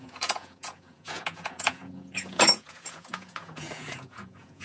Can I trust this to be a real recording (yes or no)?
no